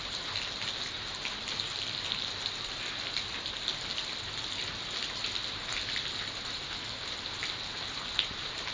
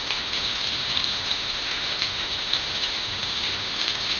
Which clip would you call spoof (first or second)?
second